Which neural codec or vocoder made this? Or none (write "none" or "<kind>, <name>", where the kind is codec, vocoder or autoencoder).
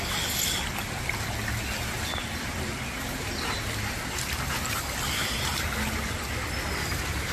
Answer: none